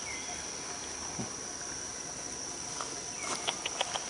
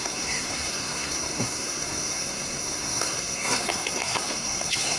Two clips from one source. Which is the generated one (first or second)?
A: second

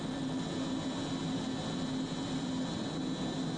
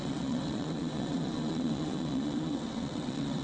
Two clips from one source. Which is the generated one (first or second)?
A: second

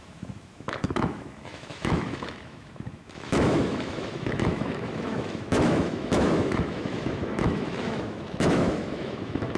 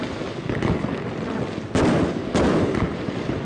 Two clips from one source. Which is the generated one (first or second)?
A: first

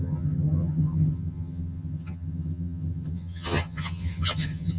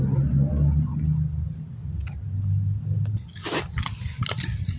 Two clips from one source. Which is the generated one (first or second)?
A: first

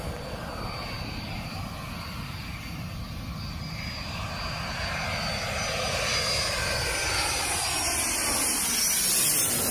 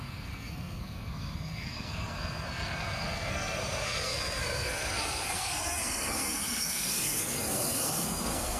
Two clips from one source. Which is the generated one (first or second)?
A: second